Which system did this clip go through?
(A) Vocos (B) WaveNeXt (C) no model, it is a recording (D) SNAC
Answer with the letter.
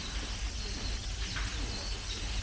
C